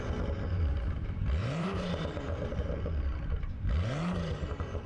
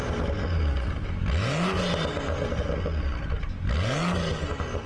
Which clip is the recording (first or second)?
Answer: second